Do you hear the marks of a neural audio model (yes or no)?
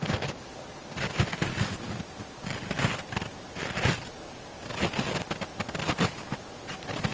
no